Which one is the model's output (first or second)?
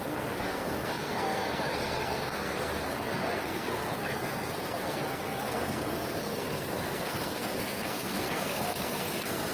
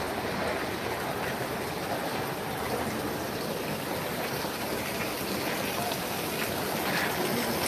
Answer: first